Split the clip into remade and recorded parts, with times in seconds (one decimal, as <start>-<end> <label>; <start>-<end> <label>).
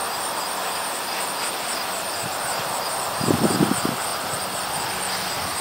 0.0-5.6 recorded